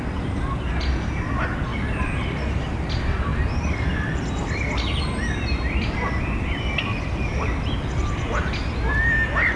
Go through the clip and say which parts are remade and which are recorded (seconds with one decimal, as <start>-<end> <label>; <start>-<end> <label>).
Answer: 0.0-9.6 recorded